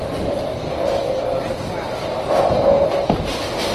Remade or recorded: recorded